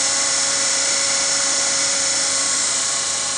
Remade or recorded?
remade